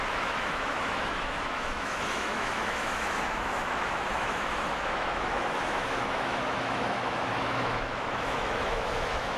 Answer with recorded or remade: remade